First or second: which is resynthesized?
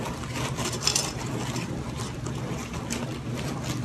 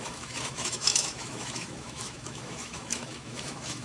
second